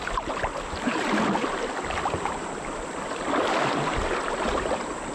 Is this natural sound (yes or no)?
no